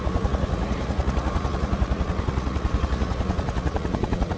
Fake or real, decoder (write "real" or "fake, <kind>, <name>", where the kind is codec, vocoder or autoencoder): fake, vocoder, Vocos